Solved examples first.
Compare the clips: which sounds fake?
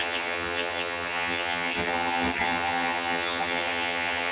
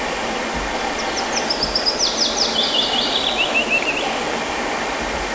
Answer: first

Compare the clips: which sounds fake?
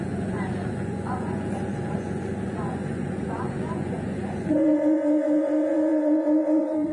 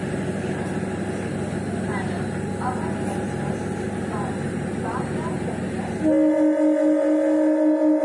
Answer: first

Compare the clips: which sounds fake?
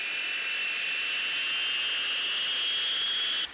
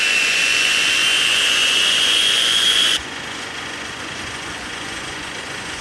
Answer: second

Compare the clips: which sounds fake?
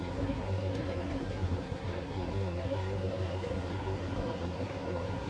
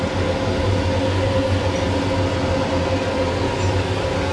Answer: first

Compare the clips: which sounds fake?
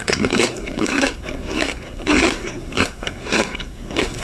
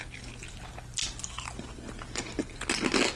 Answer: first